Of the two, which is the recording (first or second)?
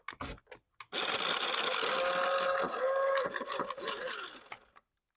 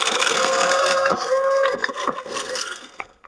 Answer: first